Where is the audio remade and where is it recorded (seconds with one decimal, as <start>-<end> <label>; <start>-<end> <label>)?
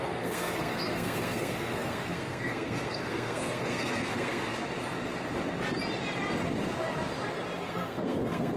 0.0-4.5 remade; 4.5-7.6 recorded; 7.6-8.6 remade